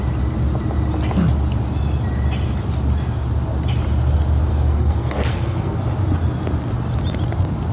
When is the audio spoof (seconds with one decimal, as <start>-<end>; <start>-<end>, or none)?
4.5-5.8